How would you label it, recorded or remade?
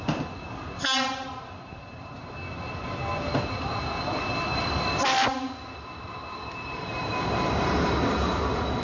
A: recorded